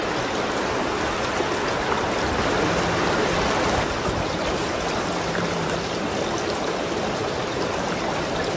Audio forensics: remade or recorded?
recorded